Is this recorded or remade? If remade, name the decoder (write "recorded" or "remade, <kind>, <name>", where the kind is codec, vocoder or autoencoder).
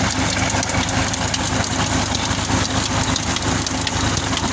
recorded